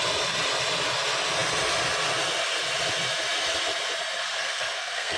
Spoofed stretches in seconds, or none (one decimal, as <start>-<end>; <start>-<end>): 4.3-5.2